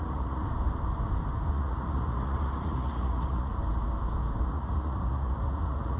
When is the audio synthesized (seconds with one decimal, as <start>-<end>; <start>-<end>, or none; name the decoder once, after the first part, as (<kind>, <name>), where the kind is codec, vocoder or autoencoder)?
0.0-0.4 (vocoder, Vocos); 1.5-3.5; 4.4-6.0